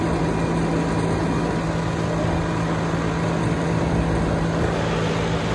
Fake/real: real